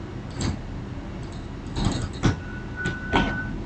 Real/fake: real